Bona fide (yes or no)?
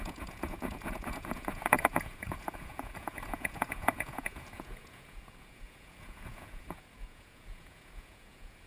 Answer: no